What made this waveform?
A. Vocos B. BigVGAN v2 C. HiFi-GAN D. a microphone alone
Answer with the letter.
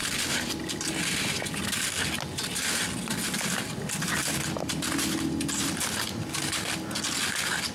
D